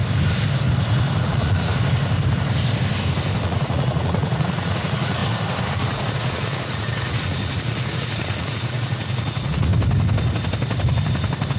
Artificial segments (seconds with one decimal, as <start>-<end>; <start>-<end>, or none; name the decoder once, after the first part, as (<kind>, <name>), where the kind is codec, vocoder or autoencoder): 1.2-1.7 (vocoder, Vocos); 3.4-5.2; 5.7-9.7